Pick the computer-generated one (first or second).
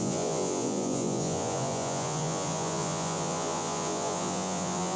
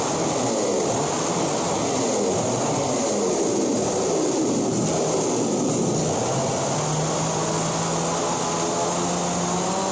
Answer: first